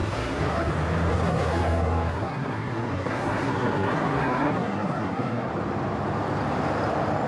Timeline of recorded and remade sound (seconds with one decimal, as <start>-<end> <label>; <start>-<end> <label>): 0.0-0.7 remade; 0.7-1.1 recorded; 1.1-5.5 remade; 5.5-7.3 recorded